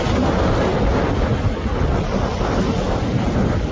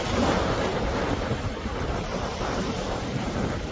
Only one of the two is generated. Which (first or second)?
second